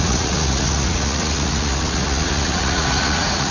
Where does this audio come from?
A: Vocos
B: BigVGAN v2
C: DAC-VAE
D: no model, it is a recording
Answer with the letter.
A